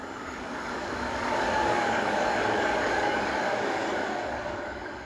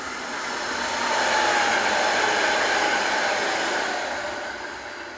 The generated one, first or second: first